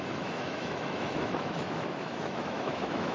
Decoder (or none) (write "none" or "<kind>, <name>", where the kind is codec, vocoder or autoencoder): autoencoder, DAC-VAE